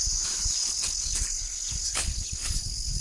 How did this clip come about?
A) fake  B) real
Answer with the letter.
A